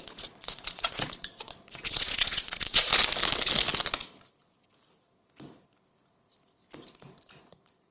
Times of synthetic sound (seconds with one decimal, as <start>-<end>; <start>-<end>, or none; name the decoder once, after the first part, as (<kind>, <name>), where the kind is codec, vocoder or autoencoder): 0.0-2.9 (vocoder, Vocos); 7.4-7.9